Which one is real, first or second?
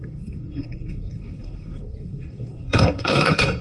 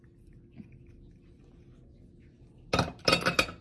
second